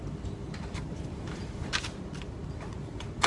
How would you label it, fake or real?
fake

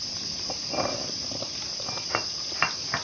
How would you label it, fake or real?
real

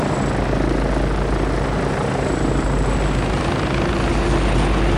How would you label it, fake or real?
real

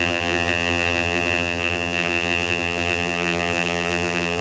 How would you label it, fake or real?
fake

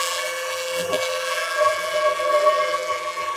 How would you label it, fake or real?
fake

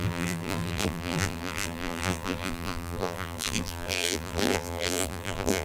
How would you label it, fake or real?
fake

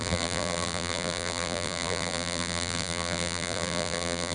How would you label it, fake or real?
fake